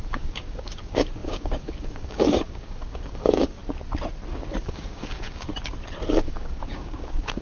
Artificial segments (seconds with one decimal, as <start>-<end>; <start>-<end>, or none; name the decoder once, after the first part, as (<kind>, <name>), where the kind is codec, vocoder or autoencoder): 0.0-3.6 (codec, DAC); 4.6-5.5; 6.1-7.4